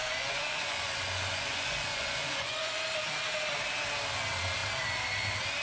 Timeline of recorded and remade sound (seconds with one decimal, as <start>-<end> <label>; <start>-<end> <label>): 0.0-2.8 remade; 2.8-5.6 recorded